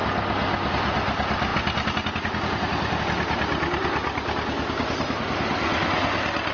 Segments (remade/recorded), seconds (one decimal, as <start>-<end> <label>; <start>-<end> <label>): 0.0-6.5 recorded

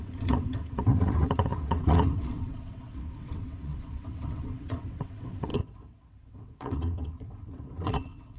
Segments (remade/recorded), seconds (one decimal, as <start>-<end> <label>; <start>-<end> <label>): 0.0-8.4 remade

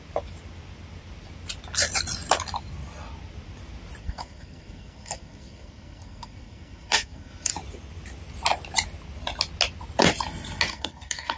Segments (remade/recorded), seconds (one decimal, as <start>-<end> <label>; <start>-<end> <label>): 0.0-4.0 recorded; 4.0-7.5 remade; 7.5-10.7 recorded; 10.7-11.4 remade

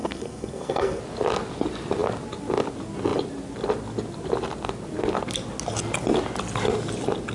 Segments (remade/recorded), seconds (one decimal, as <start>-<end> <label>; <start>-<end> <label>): 0.0-1.0 remade; 1.0-7.3 recorded

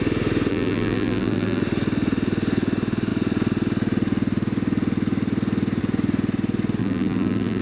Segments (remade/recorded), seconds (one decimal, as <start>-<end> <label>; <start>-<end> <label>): 0.0-0.5 recorded; 0.5-1.6 remade; 1.6-6.8 recorded; 6.8-7.6 remade

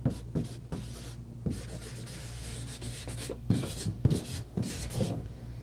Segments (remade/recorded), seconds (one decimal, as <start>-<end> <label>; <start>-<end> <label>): 0.0-2.2 recorded; 2.2-5.6 remade

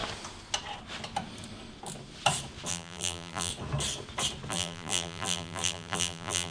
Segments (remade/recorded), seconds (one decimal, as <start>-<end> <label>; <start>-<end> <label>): 0.0-2.7 recorded; 2.7-3.5 remade; 3.5-4.5 recorded; 4.5-6.5 remade

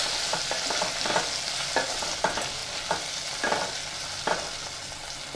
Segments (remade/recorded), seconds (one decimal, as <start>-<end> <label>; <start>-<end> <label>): 0.0-5.4 recorded